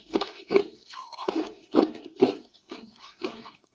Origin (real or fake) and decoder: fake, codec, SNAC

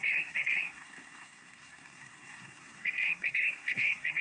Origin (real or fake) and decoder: fake, codec, SNAC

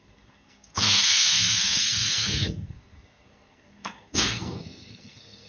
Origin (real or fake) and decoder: fake, codec, SNAC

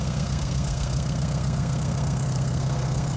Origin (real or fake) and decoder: fake, codec, SNAC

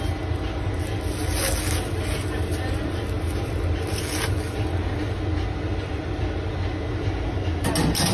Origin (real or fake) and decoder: real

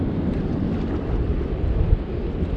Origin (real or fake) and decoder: real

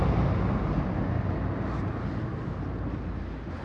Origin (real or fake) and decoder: real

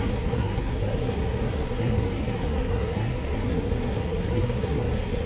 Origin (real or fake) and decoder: fake, codec, SNAC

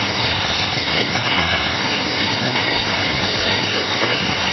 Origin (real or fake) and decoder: fake, codec, SNAC